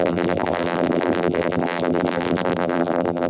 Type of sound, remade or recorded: remade